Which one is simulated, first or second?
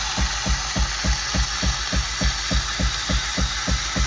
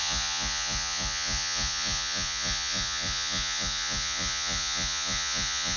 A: second